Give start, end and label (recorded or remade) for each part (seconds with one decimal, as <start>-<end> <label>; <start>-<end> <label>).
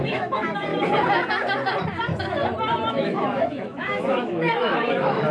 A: 0.0-0.7 remade; 0.7-2.9 recorded; 2.9-5.3 remade